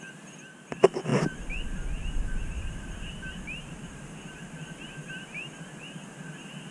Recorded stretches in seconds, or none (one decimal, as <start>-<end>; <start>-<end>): 0.0-6.7